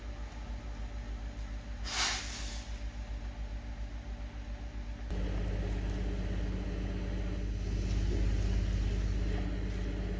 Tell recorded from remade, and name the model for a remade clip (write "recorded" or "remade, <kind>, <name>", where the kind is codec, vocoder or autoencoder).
recorded